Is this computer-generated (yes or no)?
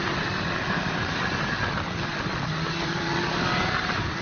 no